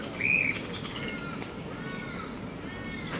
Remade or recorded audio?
recorded